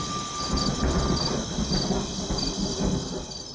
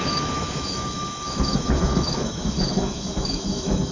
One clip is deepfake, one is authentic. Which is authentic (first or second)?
first